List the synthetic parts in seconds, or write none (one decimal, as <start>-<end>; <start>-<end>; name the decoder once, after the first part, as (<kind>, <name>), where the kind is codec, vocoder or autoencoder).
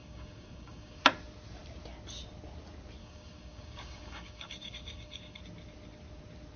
0.0-1.0 (codec, DAC); 3.0-5.4